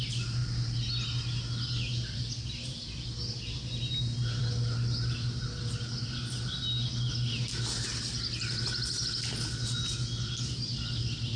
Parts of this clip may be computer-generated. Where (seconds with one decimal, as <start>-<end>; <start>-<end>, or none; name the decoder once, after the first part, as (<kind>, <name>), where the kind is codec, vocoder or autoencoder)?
none